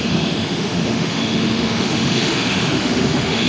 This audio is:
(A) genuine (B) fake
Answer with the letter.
B